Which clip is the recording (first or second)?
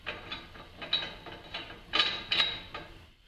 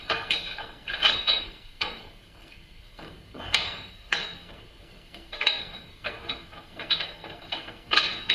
first